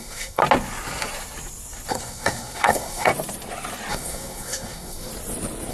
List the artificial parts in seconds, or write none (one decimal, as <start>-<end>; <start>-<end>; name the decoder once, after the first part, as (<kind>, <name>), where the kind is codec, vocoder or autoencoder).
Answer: 0.0-0.4 (codec, SNAC); 1.9-3.1; 3.9-5.1